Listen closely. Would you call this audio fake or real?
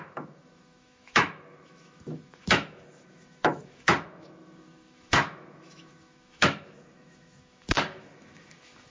fake